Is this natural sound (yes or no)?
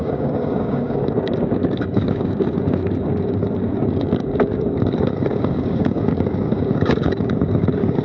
no